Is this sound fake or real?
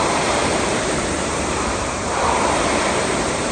fake